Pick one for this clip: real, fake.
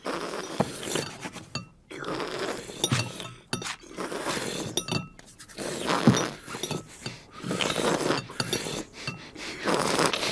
real